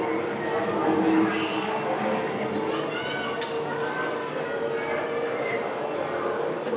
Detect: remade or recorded recorded